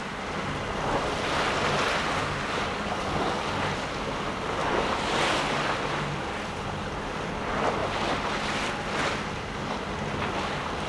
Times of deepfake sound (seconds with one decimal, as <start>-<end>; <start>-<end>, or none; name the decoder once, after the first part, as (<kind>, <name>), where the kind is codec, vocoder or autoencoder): 2.2-3.4 (codec, DAC); 4.6-5.2